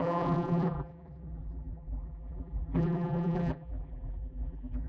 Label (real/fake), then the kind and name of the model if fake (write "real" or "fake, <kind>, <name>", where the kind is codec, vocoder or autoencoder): fake, vocoder, BigVGAN v2